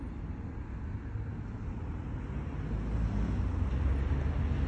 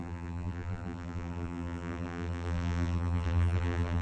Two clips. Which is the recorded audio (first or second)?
first